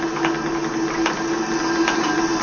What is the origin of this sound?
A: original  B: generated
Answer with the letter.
A